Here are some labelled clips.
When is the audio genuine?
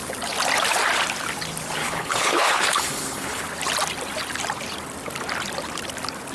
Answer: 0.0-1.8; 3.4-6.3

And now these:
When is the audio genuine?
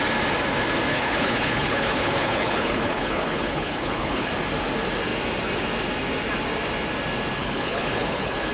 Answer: 0.0-0.9; 4.3-7.4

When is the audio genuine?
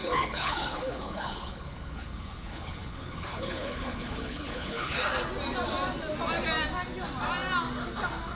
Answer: 5.0-8.3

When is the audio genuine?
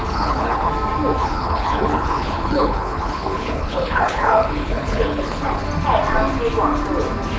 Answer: 0.7-1.2; 5.6-7.4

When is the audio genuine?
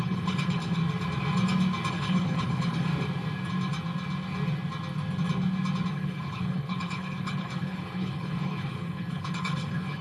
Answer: 0.8-1.9; 2.9-5.9